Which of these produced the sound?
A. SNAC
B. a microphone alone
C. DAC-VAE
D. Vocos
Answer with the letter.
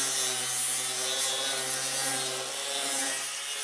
B